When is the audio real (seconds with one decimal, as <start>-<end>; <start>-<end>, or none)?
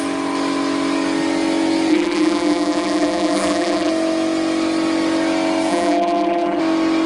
0.0-1.9; 3.9-5.7; 6.6-7.1